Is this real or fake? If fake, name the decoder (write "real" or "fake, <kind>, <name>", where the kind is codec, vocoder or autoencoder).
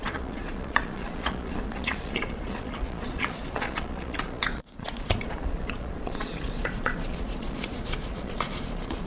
fake, vocoder, Vocos